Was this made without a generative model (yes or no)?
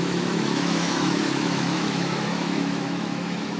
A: no